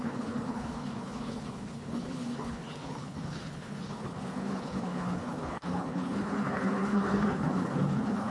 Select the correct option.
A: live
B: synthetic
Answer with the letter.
B